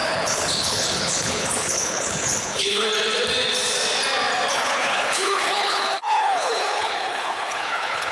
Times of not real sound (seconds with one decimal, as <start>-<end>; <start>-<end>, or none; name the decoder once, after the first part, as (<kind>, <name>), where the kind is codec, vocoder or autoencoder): 0.0-2.9 (codec, HILCodec); 4.5-8.1